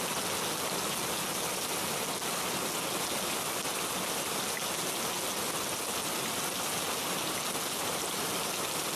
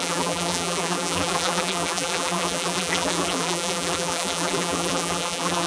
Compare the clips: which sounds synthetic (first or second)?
second